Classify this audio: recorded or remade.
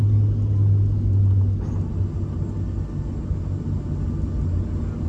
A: recorded